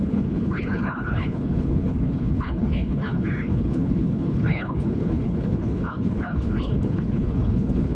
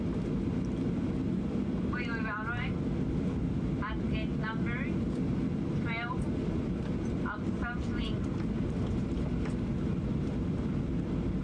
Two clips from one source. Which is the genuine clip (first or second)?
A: second